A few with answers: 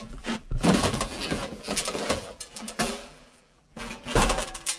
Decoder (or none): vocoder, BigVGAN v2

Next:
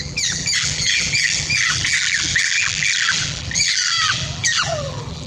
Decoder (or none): vocoder, BigVGAN v2